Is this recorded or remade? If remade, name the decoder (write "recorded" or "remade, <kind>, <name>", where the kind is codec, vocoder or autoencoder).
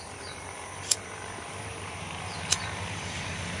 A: remade, vocoder, BigVGAN v2